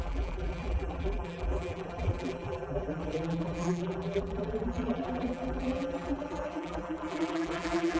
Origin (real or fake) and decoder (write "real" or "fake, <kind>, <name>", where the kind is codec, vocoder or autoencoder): fake, vocoder, BigVGAN v2